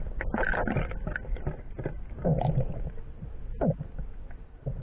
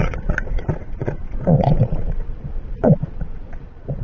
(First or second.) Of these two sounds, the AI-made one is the second